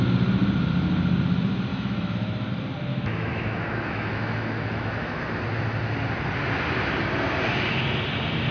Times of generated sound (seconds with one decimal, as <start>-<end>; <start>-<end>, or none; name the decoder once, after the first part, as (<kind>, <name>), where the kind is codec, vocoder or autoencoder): 1.7-2.5 (autoencoder, DAC-VAE); 2.9-5.2